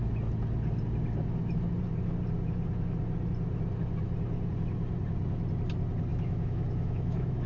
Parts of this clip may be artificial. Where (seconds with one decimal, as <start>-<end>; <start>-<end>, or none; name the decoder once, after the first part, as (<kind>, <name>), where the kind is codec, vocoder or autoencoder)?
6.1-7.5 (autoencoder, DAC-VAE)